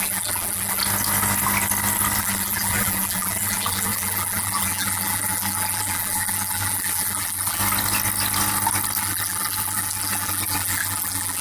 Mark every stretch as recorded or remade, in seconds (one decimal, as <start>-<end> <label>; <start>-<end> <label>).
0.0-0.8 remade; 0.8-2.2 recorded; 2.2-7.6 remade; 7.6-9.0 recorded; 9.0-11.4 remade